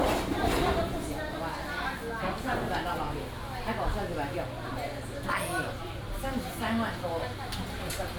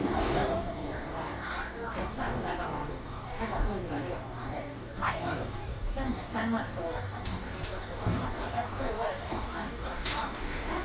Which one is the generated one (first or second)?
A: second